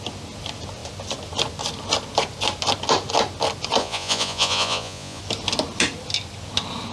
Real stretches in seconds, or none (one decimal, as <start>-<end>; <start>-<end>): 0.0-3.8; 5.2-6.9